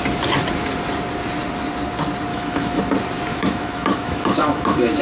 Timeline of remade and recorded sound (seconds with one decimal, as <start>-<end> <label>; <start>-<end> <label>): 0.0-2.3 recorded; 2.3-2.8 remade; 2.8-3.3 recorded; 3.3-5.0 remade